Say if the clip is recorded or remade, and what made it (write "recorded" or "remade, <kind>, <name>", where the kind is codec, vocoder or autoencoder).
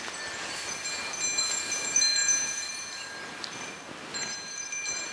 recorded